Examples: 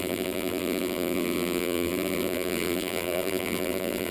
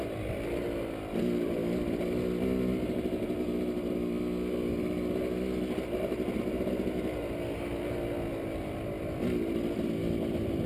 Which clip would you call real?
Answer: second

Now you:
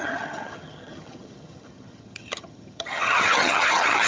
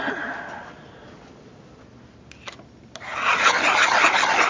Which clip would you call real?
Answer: second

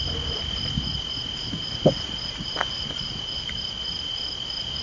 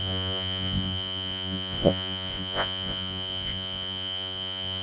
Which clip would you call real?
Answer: first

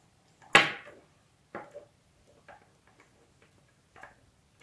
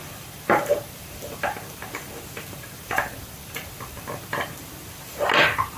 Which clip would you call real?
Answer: first